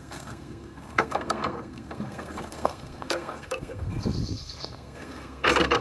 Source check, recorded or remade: remade